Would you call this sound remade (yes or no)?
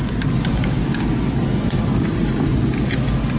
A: no